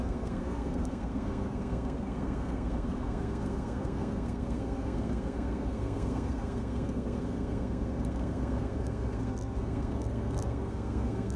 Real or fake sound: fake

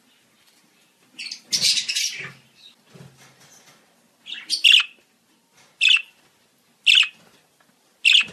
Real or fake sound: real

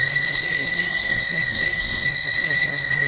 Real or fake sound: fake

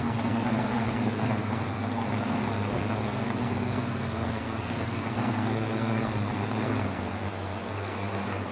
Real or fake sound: fake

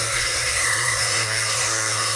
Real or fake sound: fake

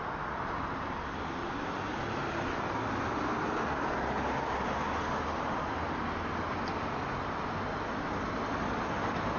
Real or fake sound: real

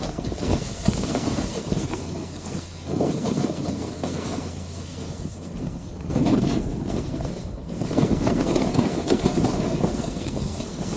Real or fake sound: fake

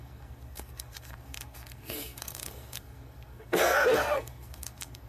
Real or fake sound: fake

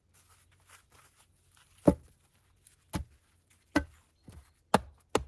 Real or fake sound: real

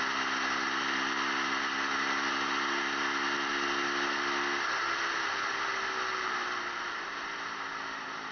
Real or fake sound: real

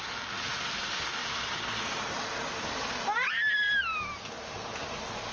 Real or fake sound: real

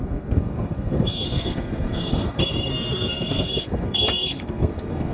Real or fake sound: fake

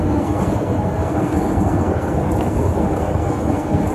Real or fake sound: fake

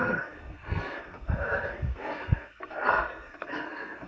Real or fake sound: fake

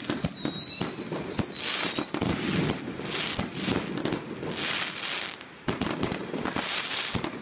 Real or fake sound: real